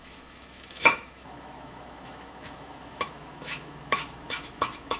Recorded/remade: remade